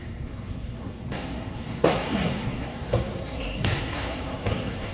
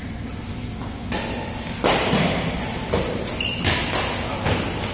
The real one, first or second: second